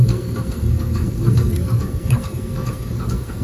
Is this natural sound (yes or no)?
no